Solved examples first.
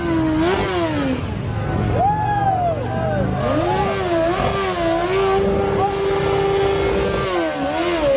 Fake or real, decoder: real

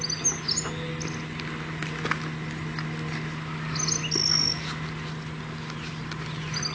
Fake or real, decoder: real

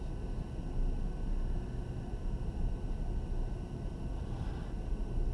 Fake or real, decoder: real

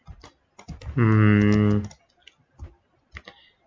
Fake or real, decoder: real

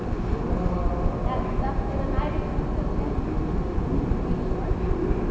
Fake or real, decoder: real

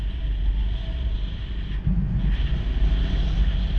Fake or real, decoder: real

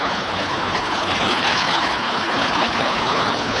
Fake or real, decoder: fake, codec, HILCodec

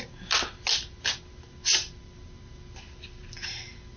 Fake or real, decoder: real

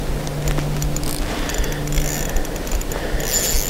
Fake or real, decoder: real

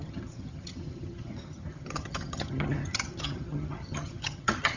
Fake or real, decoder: fake, vocoder, HiFi-GAN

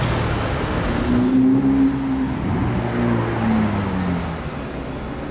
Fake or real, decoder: real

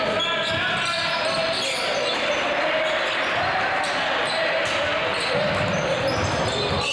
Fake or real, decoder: real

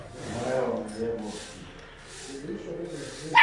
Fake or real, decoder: real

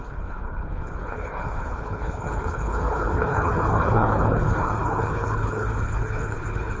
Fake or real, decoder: fake, codec, HILCodec